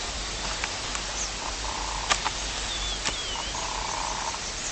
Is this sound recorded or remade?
recorded